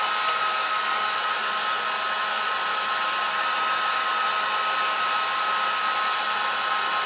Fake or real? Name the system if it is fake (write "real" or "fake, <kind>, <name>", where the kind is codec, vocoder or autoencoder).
real